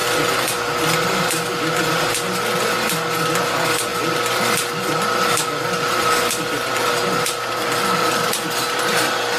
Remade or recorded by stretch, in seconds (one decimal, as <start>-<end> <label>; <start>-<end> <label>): 0.0-9.4 recorded